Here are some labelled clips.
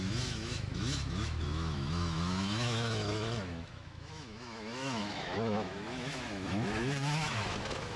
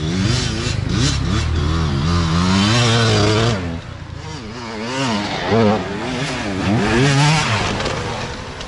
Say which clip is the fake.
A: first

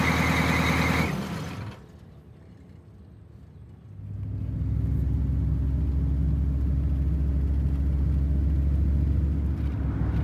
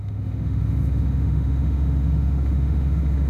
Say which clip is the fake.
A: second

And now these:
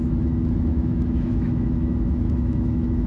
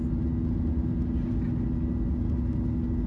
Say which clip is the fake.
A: first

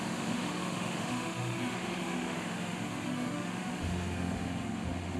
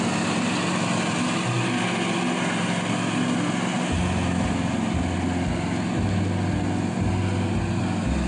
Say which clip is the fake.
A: first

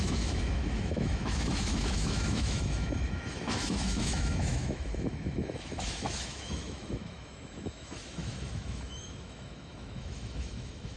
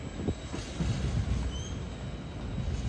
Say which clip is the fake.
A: first